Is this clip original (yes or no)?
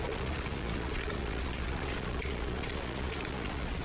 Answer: no